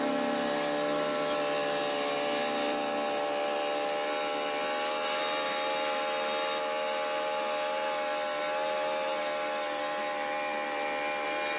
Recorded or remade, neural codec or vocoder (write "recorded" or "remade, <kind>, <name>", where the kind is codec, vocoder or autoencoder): recorded